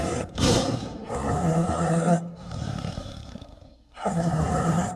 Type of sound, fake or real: fake